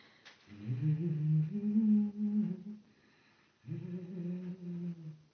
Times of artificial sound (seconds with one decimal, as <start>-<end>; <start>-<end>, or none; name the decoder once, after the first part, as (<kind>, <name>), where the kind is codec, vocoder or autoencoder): none